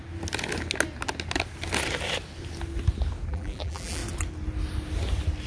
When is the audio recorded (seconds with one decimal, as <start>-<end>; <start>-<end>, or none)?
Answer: 0.0-3.3; 4.0-5.5